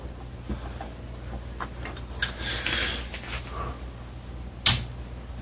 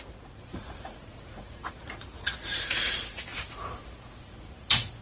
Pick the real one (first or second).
first